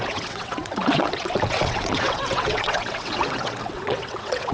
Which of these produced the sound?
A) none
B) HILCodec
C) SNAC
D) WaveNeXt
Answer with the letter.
D